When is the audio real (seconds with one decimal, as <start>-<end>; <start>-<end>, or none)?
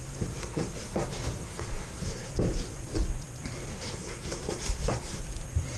0.0-0.4; 2.3-3.7; 5.2-5.8